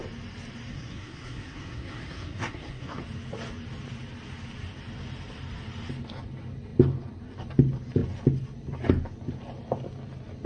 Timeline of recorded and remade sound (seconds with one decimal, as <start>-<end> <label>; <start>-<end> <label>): 0.0-0.7 recorded; 0.7-3.0 remade; 3.0-10.5 recorded